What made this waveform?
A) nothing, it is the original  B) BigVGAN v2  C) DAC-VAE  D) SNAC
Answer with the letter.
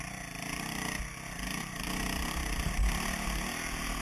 A